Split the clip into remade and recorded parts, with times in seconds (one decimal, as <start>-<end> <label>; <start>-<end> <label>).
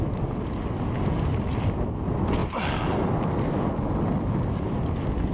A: 0.0-5.3 recorded